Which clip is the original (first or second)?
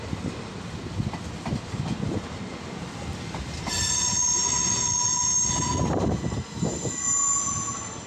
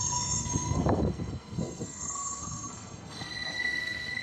first